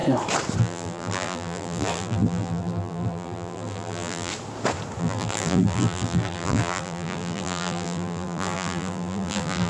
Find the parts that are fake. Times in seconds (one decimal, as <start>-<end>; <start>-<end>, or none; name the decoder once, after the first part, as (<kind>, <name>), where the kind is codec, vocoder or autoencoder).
0.6-4.3 (vocoder, BigVGAN v2); 5.0-9.7